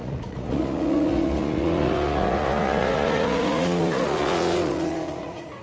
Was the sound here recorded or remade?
remade